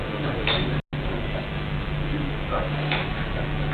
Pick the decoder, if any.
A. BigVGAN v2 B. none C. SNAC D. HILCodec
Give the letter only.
B